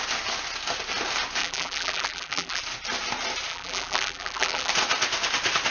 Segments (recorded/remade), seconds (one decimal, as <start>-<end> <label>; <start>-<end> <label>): 0.0-1.4 recorded; 1.4-2.6 remade; 2.6-3.5 recorded; 3.5-4.7 remade; 4.7-5.7 recorded